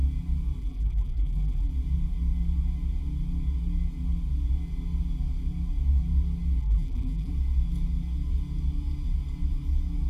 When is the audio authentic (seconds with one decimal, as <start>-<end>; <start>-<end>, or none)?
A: 0.0-0.6; 1.7-6.6; 7.3-10.1